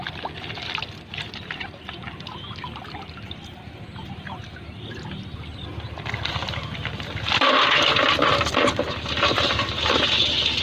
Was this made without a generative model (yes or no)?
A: yes